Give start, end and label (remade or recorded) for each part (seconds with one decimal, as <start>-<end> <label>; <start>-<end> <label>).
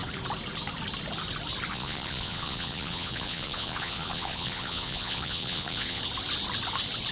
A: 0.0-1.7 recorded; 1.7-6.0 remade; 6.0-7.1 recorded